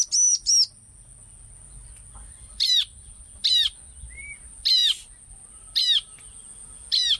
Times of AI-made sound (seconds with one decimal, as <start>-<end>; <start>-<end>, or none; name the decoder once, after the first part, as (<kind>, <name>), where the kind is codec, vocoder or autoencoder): 2.2-2.8 (vocoder, BigVGAN v2)

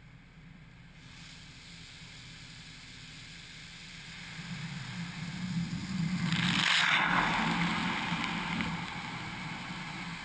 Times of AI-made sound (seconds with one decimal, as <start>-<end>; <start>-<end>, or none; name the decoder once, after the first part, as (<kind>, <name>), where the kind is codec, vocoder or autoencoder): none

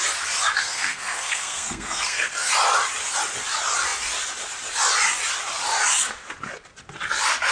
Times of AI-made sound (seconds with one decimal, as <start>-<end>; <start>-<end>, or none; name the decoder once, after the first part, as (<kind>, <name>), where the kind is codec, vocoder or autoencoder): 0.6-2.5 (codec, SNAC)